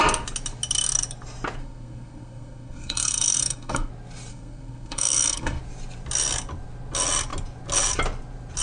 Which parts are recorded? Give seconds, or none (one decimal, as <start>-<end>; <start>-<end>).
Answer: 0.0-1.6; 3.9-4.3; 5.6-8.6